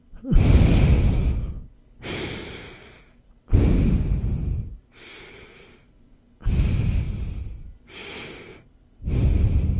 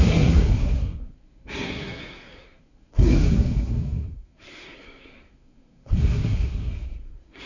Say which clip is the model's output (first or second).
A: second